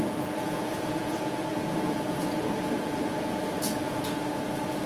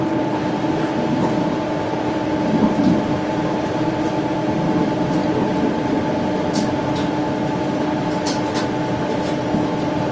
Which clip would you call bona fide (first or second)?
second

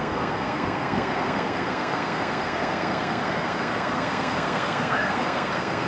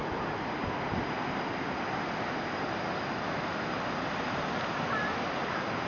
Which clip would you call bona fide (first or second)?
second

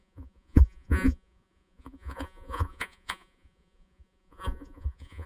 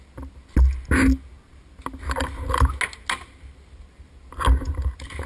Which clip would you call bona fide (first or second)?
second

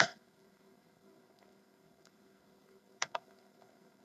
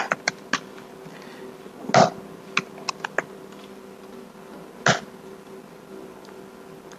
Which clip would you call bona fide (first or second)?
second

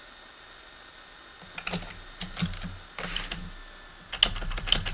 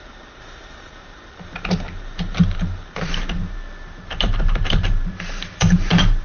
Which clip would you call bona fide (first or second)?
first